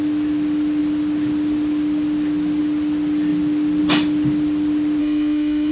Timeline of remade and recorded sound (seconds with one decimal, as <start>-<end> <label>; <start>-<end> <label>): 0.0-5.0 recorded; 5.0-5.7 remade